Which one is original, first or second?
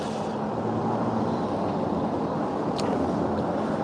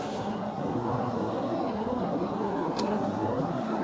first